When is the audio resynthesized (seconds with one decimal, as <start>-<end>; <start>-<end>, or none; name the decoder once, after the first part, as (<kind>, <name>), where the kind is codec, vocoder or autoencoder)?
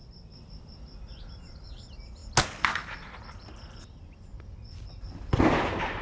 none